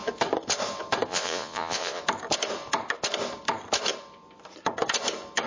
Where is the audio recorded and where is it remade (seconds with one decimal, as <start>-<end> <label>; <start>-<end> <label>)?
0.0-1.1 recorded; 1.1-2.0 remade; 2.0-5.5 recorded